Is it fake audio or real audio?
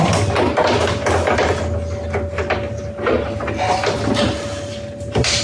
real